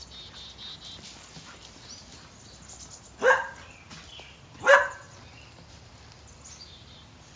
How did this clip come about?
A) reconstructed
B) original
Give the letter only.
B